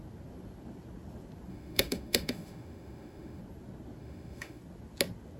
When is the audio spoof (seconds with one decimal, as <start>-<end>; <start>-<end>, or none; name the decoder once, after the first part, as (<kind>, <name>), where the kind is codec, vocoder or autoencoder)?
1.5-3.4 (autoencoder, DAC-VAE); 4.0-4.6